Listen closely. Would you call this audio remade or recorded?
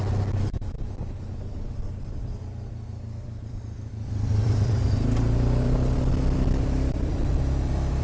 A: remade